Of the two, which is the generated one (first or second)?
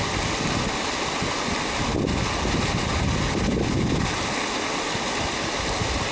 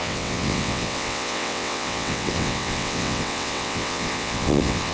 second